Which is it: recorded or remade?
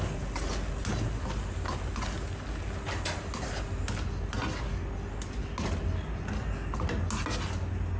recorded